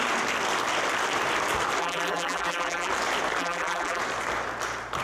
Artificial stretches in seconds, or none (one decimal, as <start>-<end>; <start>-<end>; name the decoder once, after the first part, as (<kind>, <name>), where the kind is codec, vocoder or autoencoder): 1.8-2.9 (vocoder, BigVGAN v2); 3.4-4.0